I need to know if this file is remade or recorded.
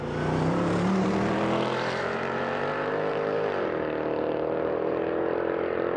remade